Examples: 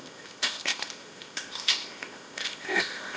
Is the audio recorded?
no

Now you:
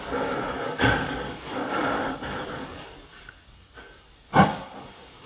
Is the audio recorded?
no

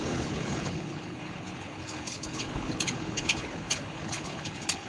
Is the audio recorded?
no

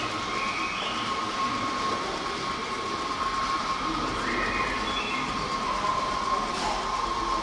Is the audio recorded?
yes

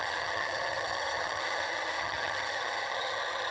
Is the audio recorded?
no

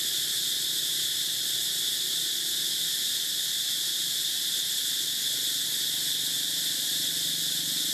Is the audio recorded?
yes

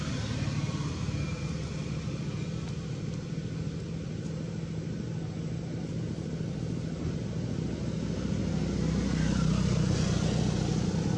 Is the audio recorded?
yes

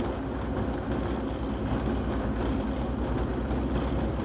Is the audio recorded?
yes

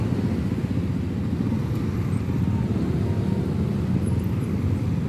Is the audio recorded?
yes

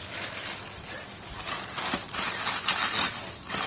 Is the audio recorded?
yes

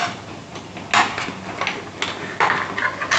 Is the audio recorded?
yes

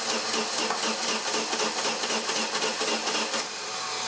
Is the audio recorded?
yes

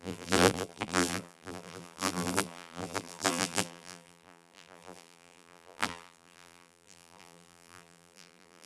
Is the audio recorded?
no